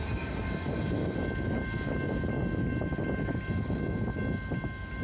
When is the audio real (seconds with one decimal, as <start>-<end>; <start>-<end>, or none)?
0.0-5.0